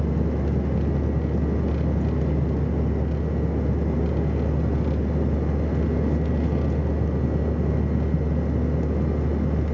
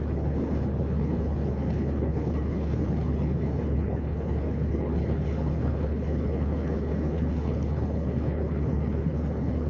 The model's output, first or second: second